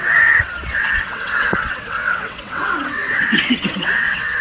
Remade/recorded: remade